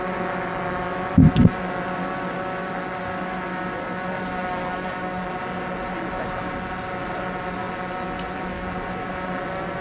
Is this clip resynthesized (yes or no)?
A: no